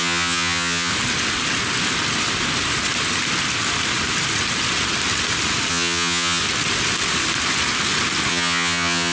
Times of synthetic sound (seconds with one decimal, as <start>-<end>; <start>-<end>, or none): 0.0-0.9; 5.7-6.4; 8.3-9.1